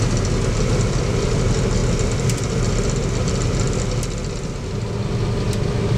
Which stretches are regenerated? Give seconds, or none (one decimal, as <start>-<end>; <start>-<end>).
none